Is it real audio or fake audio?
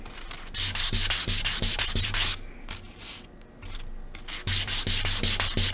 real